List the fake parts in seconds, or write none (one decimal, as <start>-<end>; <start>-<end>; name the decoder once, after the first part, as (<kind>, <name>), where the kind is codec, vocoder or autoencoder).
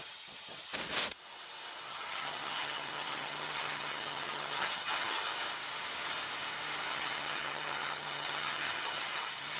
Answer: 0.0-0.7 (vocoder, HiFi-GAN); 1.9-5.3; 6.9-9.6